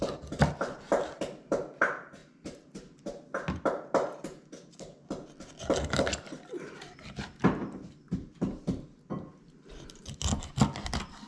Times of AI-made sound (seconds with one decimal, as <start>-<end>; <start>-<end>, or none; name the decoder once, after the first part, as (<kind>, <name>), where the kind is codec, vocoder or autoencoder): none